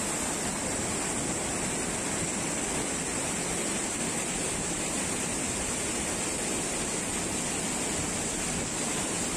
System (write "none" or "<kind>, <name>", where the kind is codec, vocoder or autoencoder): none